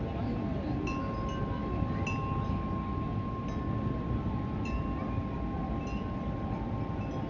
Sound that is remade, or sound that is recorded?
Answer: recorded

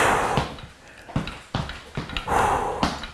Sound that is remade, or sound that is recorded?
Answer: recorded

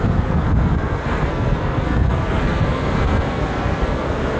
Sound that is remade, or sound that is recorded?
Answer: remade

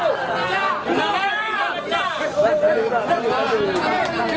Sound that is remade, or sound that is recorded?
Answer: recorded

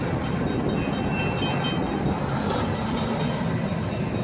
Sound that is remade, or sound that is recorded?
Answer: recorded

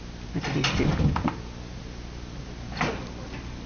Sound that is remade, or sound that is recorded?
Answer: recorded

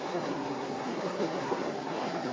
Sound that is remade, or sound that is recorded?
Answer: remade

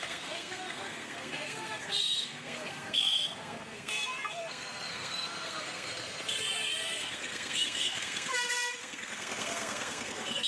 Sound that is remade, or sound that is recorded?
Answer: remade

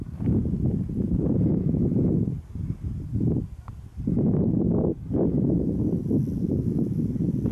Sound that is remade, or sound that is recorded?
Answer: recorded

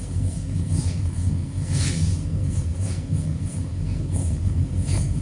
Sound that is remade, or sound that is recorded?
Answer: remade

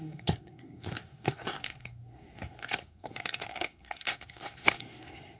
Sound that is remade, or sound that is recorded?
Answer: remade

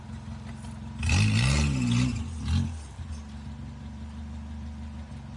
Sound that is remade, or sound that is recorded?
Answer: recorded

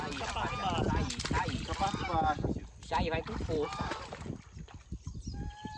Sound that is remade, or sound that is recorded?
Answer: recorded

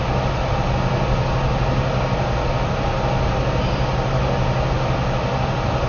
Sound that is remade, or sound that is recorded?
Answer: recorded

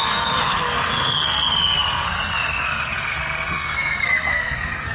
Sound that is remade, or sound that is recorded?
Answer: remade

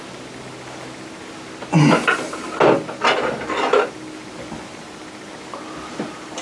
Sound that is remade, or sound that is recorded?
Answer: recorded